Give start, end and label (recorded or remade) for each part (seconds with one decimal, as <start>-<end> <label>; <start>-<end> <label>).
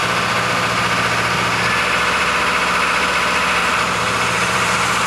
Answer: 0.0-3.6 recorded; 3.6-5.1 remade